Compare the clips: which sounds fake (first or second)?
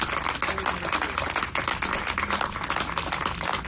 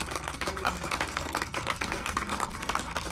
second